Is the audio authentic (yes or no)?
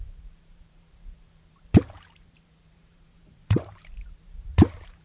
no